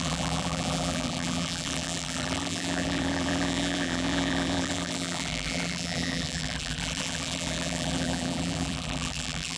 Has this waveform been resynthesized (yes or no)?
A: yes